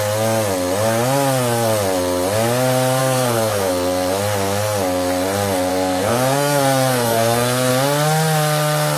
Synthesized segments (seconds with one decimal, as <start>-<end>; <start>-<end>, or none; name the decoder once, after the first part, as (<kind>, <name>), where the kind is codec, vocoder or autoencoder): 3.0-3.7 (codec, SNAC); 5.7-7.7